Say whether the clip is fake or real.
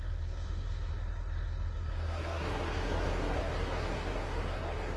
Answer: fake